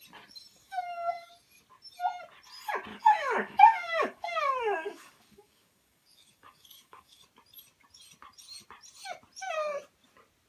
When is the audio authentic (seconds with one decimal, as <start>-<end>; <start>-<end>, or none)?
0.0-0.6; 1.3-2.9; 7.2-10.5